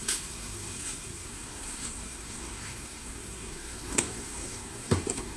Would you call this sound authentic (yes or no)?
no